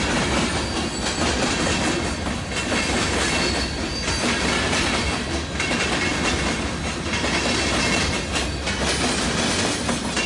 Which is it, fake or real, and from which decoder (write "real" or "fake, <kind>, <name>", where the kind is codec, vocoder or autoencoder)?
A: real